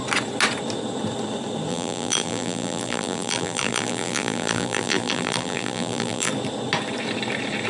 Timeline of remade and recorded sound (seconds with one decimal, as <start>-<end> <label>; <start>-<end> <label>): 0.0-1.7 recorded; 1.7-6.3 remade; 6.3-7.7 recorded